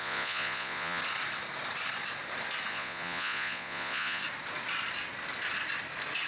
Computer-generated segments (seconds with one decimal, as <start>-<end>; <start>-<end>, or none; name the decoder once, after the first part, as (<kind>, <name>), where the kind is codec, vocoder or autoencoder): 0.0-1.0 (vocoder, Vocos); 2.7-4.2